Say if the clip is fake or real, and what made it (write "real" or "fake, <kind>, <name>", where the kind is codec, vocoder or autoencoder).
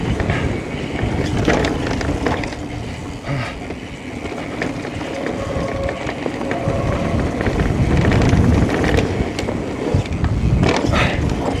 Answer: real